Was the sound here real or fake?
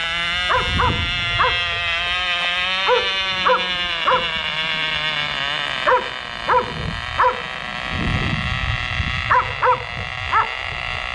real